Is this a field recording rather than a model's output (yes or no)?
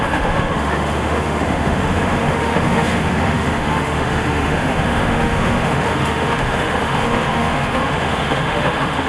no